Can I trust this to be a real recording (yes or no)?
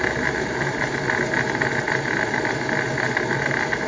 yes